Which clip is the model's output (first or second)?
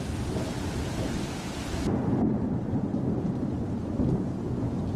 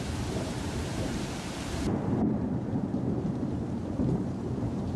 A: second